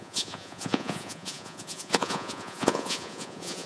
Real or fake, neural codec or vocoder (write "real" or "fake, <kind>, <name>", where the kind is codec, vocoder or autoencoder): fake, vocoder, Vocos